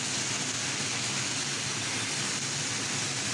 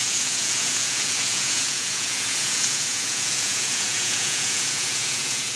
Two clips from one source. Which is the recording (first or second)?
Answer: first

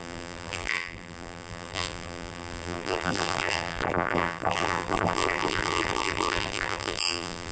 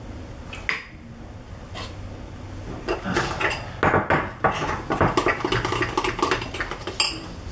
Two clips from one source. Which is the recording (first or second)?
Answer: second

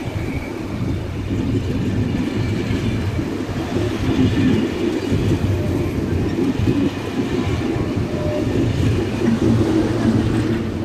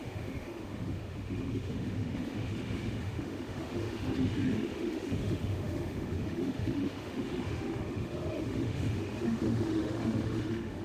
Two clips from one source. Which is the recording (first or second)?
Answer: first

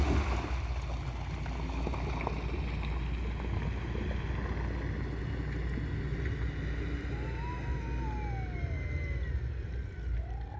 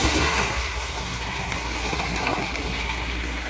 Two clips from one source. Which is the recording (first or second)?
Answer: first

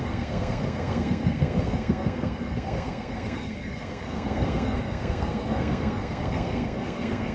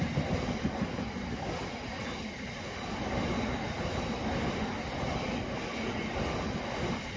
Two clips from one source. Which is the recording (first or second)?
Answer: second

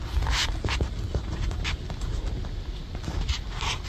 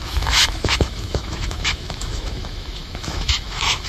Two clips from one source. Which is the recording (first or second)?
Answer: first